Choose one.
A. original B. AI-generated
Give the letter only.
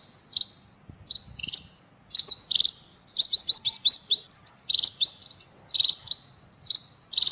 A